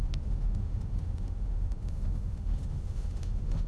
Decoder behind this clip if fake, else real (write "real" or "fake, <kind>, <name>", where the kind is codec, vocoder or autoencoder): fake, autoencoder, DAC-VAE